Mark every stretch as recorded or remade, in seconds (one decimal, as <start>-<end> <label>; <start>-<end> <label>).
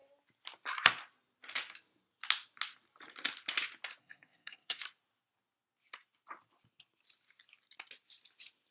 0.0-4.0 recorded; 4.0-4.8 remade; 4.8-8.7 recorded